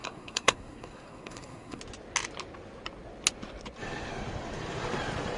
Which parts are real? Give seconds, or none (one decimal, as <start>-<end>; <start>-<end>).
1.8-5.4